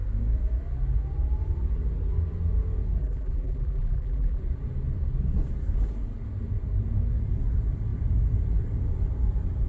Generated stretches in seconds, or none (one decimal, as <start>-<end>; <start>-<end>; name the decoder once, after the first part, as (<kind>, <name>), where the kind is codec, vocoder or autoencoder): 3.0-4.4 (vocoder, BigVGAN v2)